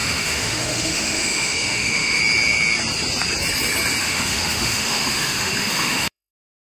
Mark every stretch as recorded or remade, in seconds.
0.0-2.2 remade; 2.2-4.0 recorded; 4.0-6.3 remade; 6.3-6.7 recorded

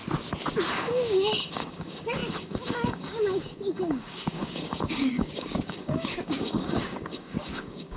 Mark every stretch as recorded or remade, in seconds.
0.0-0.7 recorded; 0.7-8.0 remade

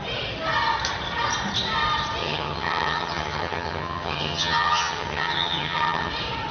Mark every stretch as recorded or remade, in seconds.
0.0-2.2 recorded; 2.2-6.1 remade; 6.1-6.5 recorded

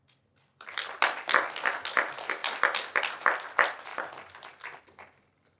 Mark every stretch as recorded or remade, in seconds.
0.0-1.4 remade; 1.4-2.4 recorded; 2.4-3.0 remade; 3.0-3.9 recorded; 3.9-4.8 remade; 4.8-5.6 recorded